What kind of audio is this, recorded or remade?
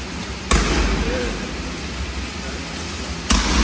recorded